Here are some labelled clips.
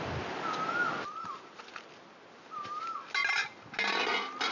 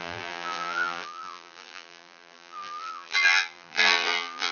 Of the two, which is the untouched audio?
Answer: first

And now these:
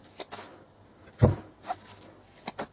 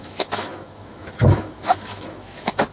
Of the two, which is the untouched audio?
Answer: first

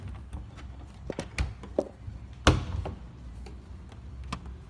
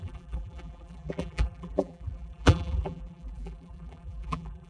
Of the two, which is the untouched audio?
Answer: first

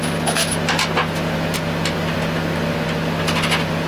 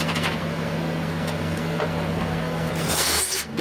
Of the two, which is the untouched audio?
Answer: first